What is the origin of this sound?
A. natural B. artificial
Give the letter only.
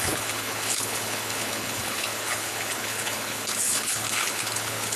B